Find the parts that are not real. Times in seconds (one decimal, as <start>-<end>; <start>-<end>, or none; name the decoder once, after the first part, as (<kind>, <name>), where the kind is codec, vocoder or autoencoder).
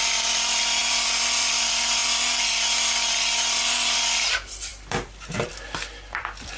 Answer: 0.0-2.0 (vocoder, BigVGAN v2); 4.3-6.6